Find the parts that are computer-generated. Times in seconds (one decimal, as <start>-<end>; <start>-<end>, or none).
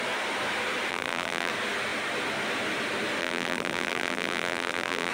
0.9-1.5; 3.2-5.1